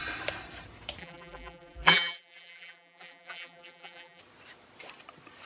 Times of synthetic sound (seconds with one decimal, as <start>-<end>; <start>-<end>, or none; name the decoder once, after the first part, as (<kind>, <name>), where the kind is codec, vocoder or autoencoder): 1.0-4.2 (vocoder, BigVGAN v2)